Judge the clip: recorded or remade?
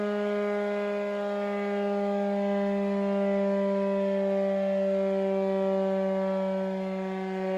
recorded